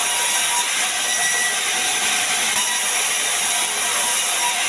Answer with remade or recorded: recorded